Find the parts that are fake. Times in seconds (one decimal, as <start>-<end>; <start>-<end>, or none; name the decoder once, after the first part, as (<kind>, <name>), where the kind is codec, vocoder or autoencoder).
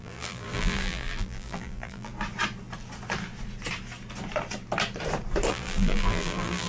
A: 0.0-2.1 (vocoder, BigVGAN v2); 5.5-6.7